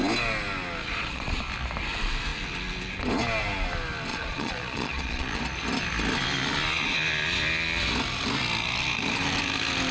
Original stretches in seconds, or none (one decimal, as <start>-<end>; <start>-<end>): 0.0-0.8; 1.4-4.1; 5.4-9.9